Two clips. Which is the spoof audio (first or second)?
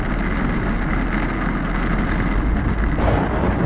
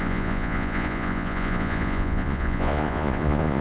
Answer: second